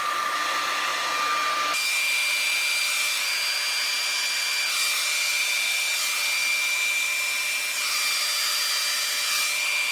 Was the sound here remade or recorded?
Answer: recorded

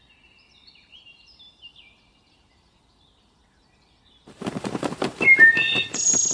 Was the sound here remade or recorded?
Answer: remade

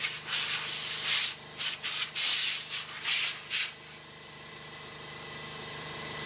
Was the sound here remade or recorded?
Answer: remade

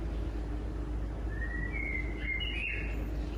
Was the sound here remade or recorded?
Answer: recorded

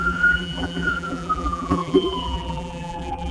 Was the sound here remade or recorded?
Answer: remade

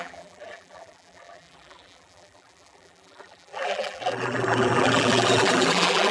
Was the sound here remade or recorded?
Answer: remade